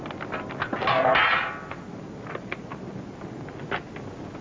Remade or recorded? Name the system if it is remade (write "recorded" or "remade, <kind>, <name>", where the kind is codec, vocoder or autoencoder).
recorded